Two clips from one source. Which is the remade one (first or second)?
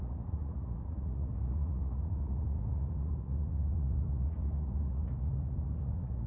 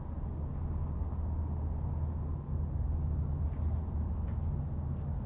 first